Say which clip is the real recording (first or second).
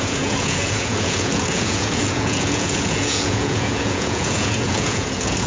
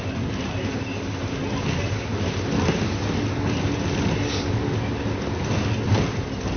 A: second